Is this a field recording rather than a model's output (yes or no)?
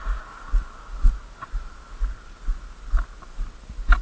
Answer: yes